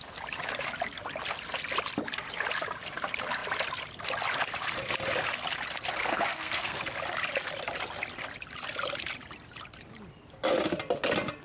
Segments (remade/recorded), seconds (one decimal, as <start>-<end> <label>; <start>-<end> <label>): 0.0-6.0 recorded; 6.0-6.8 remade; 6.8-11.4 recorded